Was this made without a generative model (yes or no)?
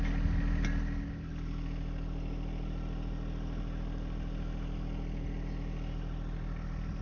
yes